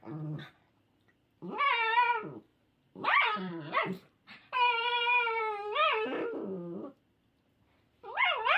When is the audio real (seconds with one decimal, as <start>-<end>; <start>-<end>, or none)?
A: 0.0-2.5; 5.4-8.6